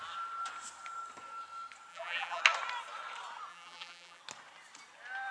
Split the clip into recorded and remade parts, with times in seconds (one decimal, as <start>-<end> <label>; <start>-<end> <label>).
0.0-1.9 recorded; 1.9-2.4 remade; 2.4-3.5 recorded; 3.5-4.2 remade; 4.2-5.3 recorded